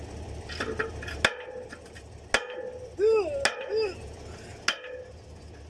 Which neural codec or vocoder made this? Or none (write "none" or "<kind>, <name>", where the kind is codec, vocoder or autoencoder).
none